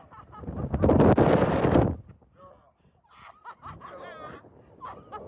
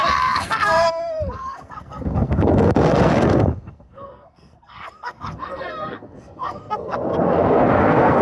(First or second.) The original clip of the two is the first